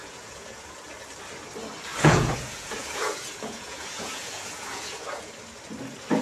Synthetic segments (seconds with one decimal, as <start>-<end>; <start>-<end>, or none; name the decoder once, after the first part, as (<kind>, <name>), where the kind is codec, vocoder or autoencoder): 0.0-0.8 (vocoder, Vocos); 1.9-5.3